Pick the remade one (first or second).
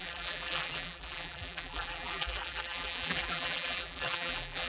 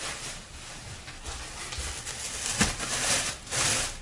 first